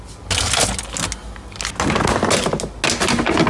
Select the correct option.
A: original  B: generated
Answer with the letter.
A